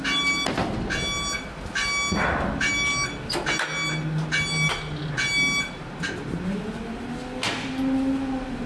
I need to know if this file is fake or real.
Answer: real